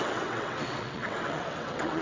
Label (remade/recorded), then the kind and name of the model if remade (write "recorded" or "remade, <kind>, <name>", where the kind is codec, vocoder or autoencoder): remade, vocoder, WaveNeXt